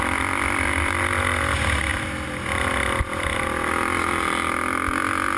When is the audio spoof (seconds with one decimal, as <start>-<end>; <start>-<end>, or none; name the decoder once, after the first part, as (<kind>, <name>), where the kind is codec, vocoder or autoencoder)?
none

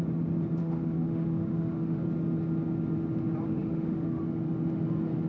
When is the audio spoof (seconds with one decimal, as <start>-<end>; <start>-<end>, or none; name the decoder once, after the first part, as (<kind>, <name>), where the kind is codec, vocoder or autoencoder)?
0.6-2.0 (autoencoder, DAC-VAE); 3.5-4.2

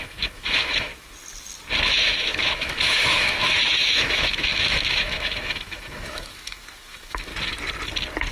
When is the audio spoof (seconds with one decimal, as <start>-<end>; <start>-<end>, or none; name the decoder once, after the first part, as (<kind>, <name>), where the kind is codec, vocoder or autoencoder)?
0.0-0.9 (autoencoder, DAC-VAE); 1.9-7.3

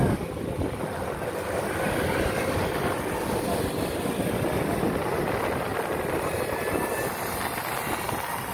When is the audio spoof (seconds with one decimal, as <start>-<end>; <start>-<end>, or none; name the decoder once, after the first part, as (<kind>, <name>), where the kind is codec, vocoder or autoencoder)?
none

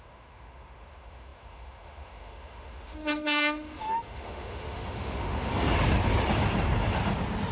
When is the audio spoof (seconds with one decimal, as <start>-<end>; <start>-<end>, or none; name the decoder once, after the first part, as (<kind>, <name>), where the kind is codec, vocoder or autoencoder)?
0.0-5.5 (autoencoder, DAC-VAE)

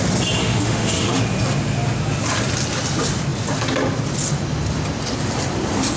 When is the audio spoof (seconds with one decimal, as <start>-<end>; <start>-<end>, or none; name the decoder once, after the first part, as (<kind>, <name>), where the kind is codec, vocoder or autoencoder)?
0.4-1.2 (autoencoder, DAC-VAE)

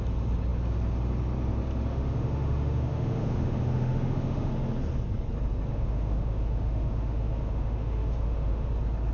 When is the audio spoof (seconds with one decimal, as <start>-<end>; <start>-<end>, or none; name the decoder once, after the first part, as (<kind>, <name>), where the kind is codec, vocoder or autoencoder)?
1.9-4.5 (autoencoder, DAC-VAE); 5.7-8.7